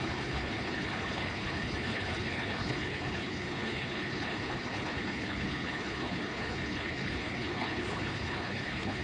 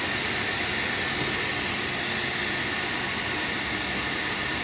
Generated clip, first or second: first